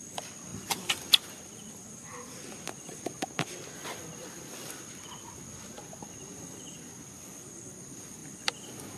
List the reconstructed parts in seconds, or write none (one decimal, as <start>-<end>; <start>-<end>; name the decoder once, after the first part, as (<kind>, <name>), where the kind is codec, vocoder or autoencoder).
none